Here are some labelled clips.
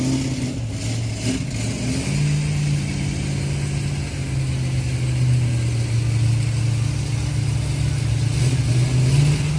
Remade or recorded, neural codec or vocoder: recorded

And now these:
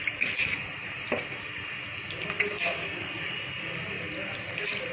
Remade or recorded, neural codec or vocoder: recorded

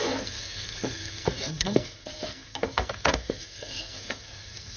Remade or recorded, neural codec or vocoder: remade, codec, SNAC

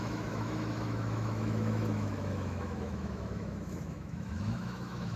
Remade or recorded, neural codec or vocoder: remade, autoencoder, DAC-VAE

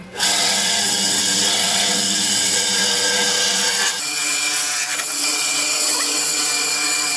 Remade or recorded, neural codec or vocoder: remade, vocoder, WaveNeXt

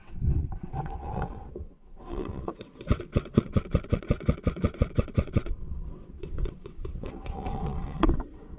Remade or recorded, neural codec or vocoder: remade, vocoder, WaveNeXt